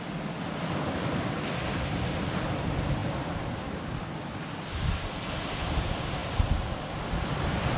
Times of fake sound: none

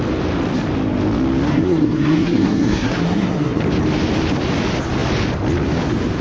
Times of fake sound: 1.5-3.6 (codec, SNAC)

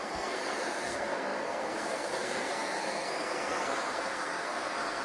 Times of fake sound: 0.0-5.0 (codec, SNAC)